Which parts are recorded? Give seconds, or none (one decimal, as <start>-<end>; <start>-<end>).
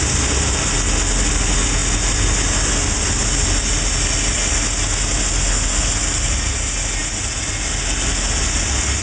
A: 0.0-9.0